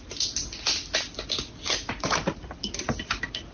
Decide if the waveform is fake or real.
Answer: real